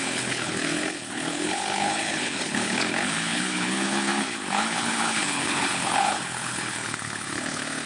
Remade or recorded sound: remade